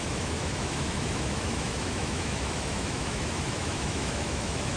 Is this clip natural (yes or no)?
no